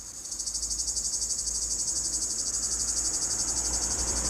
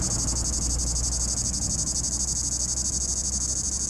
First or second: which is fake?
first